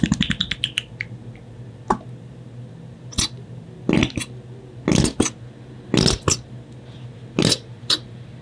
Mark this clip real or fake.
real